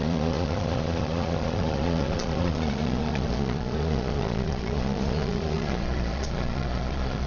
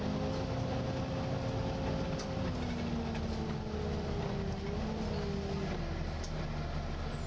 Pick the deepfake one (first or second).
first